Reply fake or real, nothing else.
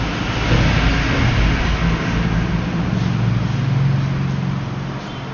real